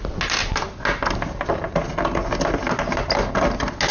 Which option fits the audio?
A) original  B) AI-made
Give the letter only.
A